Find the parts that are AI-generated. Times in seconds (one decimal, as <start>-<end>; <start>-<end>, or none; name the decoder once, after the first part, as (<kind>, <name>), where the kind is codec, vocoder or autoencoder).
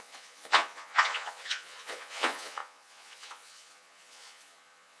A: 0.0-5.0 (vocoder, Vocos)